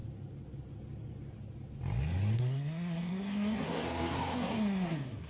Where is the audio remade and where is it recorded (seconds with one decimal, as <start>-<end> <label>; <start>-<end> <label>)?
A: 0.0-2.4 recorded; 2.4-5.3 remade